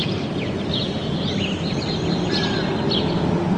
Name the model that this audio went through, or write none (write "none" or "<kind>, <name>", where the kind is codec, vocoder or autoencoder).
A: none